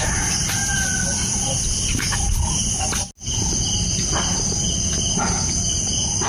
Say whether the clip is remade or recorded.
recorded